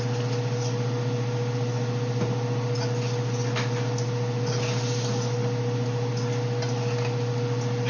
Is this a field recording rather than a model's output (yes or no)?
yes